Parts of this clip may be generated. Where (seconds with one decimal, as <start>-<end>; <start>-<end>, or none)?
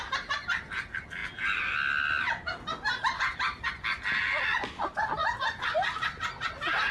none